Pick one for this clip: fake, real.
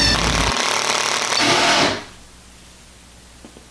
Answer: real